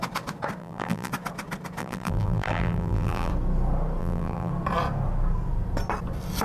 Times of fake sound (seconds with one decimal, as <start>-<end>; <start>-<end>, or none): 0.6-1.1; 1.8-3.3; 4.0-4.5